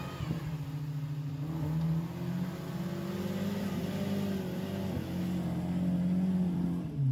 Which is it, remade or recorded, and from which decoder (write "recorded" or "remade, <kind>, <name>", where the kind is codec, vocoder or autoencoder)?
recorded